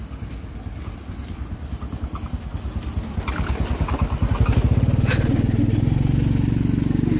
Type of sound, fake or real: real